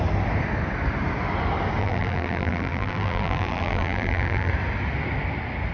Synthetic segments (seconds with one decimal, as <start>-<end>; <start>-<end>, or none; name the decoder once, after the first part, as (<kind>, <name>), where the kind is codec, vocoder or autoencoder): 1.8-4.5 (vocoder, BigVGAN v2)